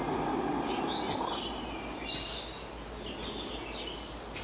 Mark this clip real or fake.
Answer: real